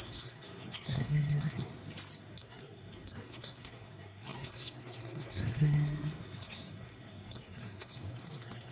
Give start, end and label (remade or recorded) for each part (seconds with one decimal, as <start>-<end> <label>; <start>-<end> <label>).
0.0-1.7 remade; 1.7-2.3 recorded; 2.3-8.7 remade